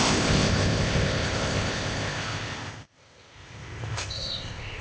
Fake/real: fake